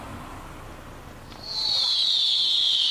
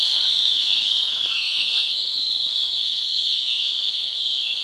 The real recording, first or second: first